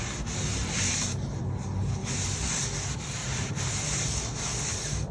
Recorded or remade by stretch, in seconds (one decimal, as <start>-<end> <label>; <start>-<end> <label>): 0.0-0.5 recorded; 0.5-1.4 remade; 1.4-3.2 recorded; 3.2-4.1 remade; 4.1-5.1 recorded